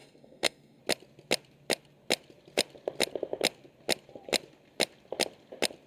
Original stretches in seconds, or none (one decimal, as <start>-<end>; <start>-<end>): 0.8-5.9